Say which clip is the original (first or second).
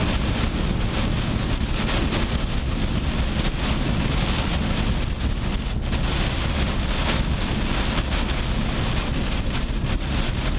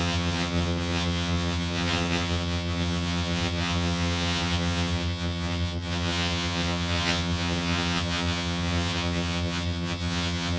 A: first